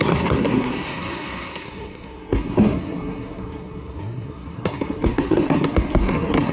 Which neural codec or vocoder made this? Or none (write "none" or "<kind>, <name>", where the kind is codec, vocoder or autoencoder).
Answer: codec, SNAC